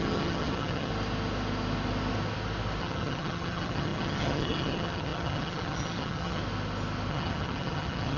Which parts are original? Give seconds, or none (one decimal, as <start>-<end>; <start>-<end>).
0.9-2.8; 6.4-7.1